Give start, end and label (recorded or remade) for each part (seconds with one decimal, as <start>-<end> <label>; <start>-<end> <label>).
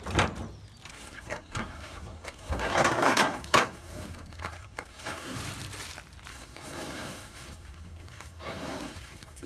0.0-0.9 recorded; 0.9-5.4 remade; 5.4-6.3 recorded; 6.3-9.5 remade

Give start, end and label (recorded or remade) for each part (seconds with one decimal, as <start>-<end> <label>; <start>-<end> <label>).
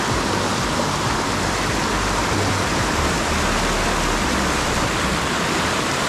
0.0-6.1 recorded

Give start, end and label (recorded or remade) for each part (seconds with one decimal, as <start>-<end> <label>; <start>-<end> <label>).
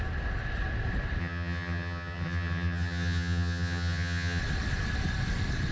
0.0-1.2 recorded; 1.2-4.4 remade; 4.4-5.7 recorded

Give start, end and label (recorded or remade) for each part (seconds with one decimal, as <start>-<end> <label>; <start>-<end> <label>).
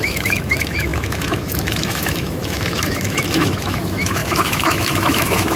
0.0-5.6 remade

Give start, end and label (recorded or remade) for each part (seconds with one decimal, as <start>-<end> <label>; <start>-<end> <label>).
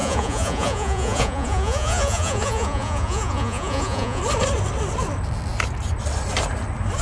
0.0-4.2 remade; 4.2-7.0 recorded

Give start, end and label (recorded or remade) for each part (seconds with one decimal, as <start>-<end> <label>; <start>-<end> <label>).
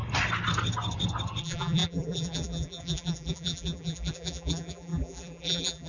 0.0-1.4 recorded; 1.4-5.9 remade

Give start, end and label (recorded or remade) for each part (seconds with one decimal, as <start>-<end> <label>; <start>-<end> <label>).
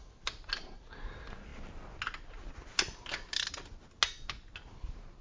0.0-5.2 recorded